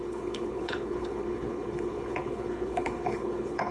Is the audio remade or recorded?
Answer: remade